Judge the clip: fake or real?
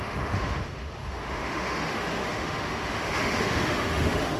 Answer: fake